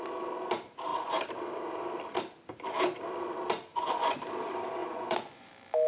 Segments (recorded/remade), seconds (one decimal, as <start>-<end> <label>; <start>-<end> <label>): 0.0-3.7 recorded; 3.7-4.2 remade; 4.2-4.8 recorded; 4.8-5.5 remade; 5.5-5.9 recorded